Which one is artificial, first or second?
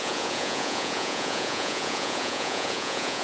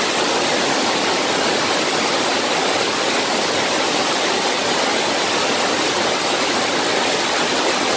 first